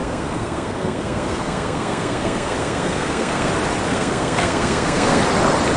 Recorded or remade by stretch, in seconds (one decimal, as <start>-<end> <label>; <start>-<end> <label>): 0.0-3.5 remade; 3.5-3.9 recorded; 3.9-5.2 remade; 5.2-5.8 recorded

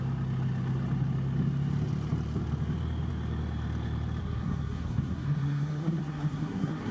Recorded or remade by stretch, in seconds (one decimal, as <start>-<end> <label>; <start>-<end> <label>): 0.0-4.2 recorded; 4.2-6.9 remade

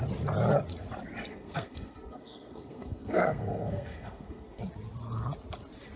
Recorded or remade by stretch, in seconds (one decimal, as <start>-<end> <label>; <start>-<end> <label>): 0.0-1.3 recorded; 1.3-4.6 remade; 4.6-6.0 recorded

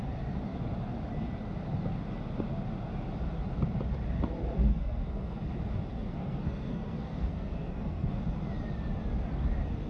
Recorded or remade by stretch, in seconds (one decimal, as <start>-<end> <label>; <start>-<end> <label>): 0.0-4.7 recorded; 4.7-5.5 remade; 5.5-5.9 recorded; 5.9-8.2 remade; 8.2-9.9 recorded

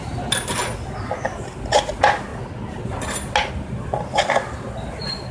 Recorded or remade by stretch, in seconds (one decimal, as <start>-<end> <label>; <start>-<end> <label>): 0.0-5.3 recorded

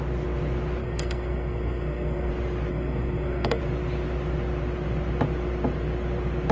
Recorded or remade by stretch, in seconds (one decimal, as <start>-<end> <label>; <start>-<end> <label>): 0.0-0.8 recorded; 0.8-2.3 remade; 2.3-2.7 recorded; 2.7-3.6 remade; 3.6-6.5 recorded

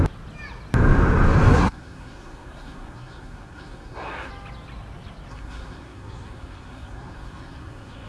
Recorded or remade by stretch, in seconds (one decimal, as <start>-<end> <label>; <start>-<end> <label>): 0.0-1.5 recorded; 1.5-4.3 remade; 4.3-5.3 recorded; 5.3-8.1 remade